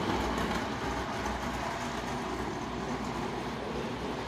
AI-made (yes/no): no